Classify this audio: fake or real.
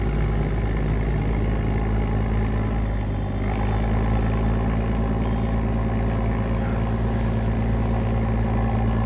real